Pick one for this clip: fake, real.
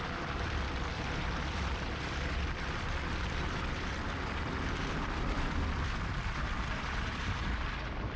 fake